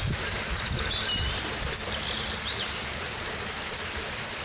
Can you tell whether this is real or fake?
real